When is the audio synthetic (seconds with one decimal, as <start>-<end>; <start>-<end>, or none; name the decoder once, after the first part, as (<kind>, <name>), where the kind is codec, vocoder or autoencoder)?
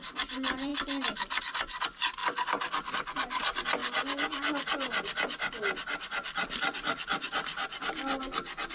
none